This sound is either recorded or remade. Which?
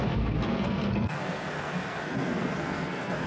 remade